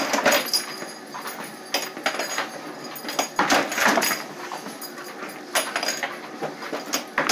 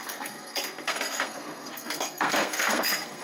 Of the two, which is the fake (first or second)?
second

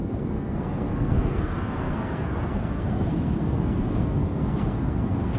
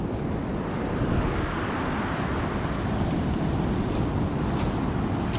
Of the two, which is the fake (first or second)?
first